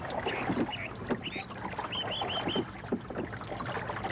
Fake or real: real